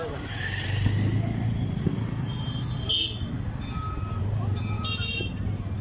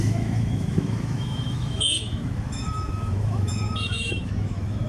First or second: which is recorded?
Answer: first